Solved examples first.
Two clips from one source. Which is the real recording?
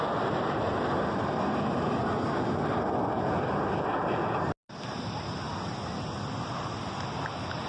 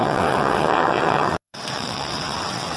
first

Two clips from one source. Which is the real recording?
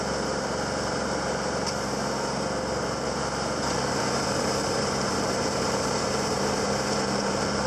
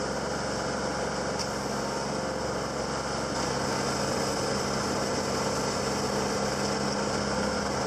second